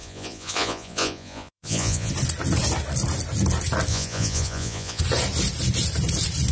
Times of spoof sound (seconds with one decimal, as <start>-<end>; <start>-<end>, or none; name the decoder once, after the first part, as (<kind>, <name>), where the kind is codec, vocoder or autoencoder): 0.0-2.1 (vocoder, Vocos); 3.9-5.0